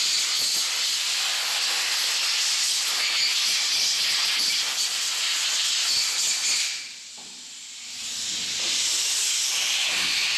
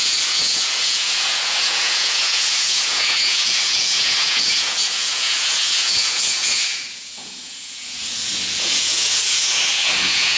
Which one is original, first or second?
first